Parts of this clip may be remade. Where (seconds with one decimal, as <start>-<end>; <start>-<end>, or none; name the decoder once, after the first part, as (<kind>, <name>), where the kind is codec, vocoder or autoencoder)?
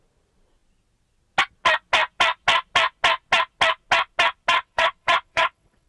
4.5-5.9 (vocoder, WaveNeXt)